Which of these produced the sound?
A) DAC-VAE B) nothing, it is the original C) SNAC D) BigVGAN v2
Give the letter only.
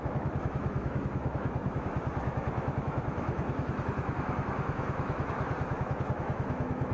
A